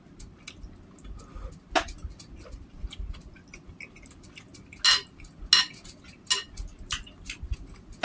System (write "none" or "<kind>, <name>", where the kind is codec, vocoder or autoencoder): none